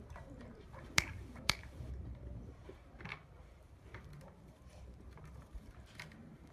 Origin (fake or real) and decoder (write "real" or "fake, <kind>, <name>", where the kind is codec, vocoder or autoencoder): fake, vocoder, BigVGAN v2